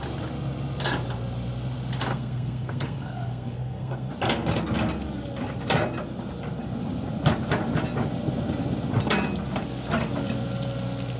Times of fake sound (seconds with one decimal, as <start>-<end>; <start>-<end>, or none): 2.1-4.1